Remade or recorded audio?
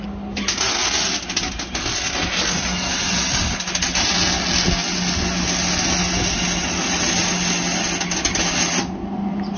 recorded